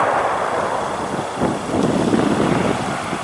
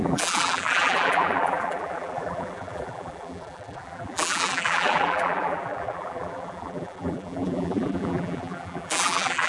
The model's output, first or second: second